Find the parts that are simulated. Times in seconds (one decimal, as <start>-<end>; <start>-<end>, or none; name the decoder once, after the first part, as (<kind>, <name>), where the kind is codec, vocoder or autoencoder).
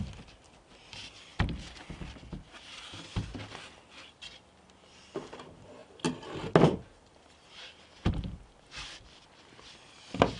none